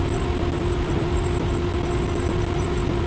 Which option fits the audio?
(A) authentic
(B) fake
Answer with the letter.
A